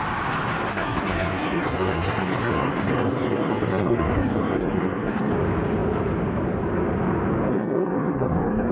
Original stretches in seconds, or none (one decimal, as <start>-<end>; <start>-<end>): 0.0-0.7; 5.3-7.5